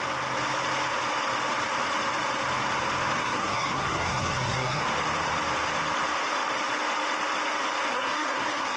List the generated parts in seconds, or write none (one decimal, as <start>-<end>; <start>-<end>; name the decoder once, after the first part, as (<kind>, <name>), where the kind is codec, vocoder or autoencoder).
3.2-4.8 (codec, SNAC); 7.9-8.8